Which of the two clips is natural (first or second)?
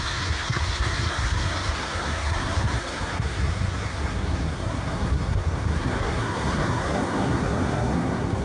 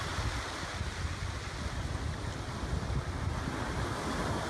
second